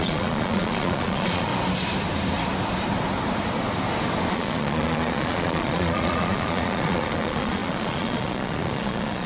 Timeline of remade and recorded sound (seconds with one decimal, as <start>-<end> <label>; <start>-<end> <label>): 0.0-1.5 remade; 1.5-4.3 recorded; 4.3-9.3 remade